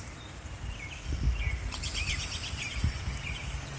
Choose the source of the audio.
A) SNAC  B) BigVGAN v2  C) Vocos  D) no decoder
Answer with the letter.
B